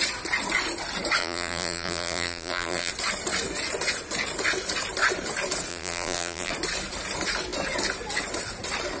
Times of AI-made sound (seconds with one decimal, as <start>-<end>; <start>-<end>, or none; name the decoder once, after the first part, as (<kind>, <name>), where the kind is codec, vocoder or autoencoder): 1.2-2.9 (vocoder, BigVGAN v2); 5.7-6.5